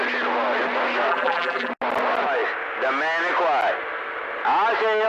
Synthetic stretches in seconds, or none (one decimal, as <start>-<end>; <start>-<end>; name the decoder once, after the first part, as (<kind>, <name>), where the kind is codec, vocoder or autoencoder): 1.1-1.7 (vocoder, BigVGAN v2)